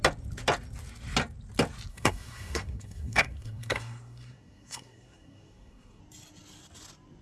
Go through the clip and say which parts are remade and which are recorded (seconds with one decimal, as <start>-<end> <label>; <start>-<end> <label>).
0.0-1.9 recorded; 1.9-6.0 remade; 6.0-7.2 recorded

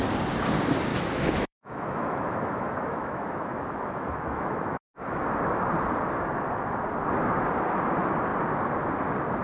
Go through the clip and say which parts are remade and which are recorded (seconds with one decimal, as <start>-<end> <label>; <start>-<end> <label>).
0.0-0.9 recorded; 0.9-5.2 remade; 5.2-9.4 recorded

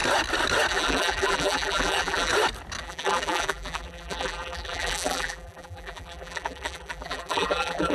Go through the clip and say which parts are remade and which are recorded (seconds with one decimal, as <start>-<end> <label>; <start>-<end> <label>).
0.0-0.7 recorded; 0.7-2.3 remade; 2.3-2.8 recorded; 2.8-7.9 remade

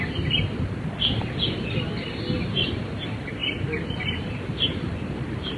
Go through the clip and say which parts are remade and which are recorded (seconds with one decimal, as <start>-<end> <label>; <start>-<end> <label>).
0.0-5.6 recorded